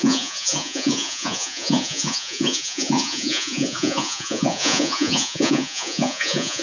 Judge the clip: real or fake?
fake